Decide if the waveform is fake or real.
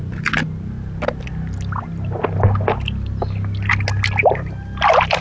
real